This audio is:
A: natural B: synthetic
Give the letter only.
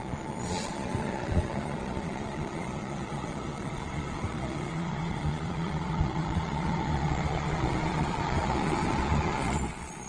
B